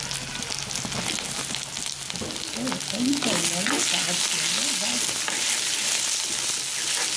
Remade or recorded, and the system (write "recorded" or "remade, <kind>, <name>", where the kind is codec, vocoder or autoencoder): recorded